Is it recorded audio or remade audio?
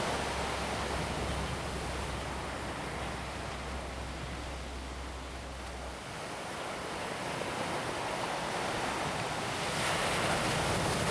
recorded